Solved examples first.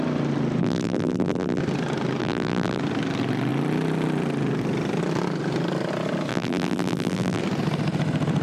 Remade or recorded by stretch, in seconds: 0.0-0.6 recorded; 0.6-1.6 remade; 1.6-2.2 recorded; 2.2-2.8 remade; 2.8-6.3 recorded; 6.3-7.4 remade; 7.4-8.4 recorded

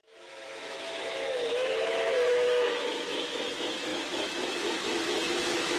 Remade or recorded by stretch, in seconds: 0.0-5.8 remade

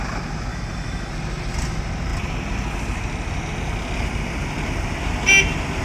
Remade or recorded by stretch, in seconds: 0.0-0.5 recorded; 0.5-1.1 remade; 1.1-5.8 recorded

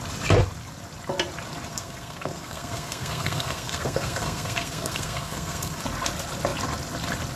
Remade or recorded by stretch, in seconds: 0.0-1.7 recorded; 1.7-5.8 remade; 5.8-7.3 recorded

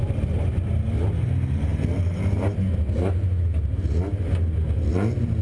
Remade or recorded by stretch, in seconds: 0.0-5.4 recorded